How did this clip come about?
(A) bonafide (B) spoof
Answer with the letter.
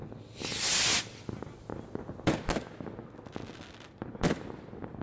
A